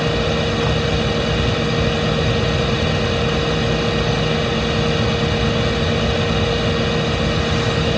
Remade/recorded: recorded